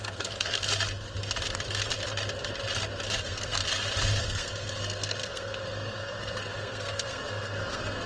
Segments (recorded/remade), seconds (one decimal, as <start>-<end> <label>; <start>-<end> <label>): 0.0-0.7 remade; 0.7-3.2 recorded; 3.2-3.6 remade; 3.6-4.2 recorded; 4.2-8.1 remade